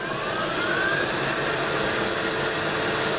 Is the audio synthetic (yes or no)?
no